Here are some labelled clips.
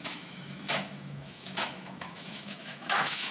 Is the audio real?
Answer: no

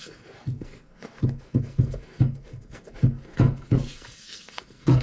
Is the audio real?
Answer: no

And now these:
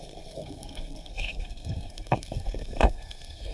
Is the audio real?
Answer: no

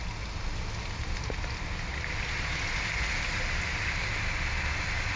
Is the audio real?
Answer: yes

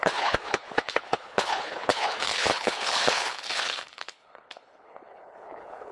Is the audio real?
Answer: no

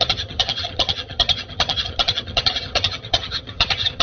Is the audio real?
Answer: no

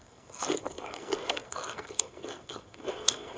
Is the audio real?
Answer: no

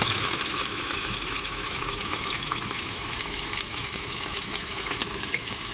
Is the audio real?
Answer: no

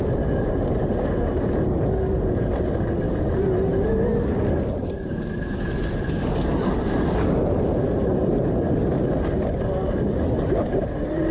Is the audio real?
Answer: yes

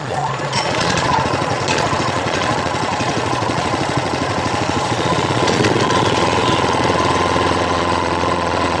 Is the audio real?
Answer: no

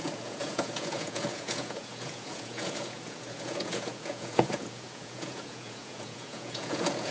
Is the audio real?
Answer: no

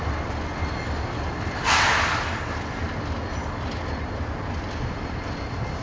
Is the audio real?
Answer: yes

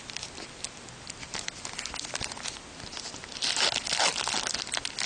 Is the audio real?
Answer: yes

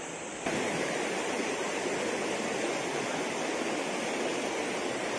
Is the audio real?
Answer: yes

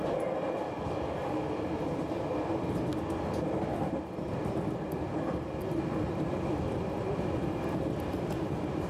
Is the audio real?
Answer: yes